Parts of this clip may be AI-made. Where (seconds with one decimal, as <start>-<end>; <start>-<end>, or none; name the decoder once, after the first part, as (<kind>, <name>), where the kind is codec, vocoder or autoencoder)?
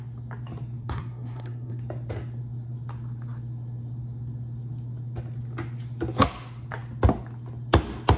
0.8-1.8 (codec, SNAC)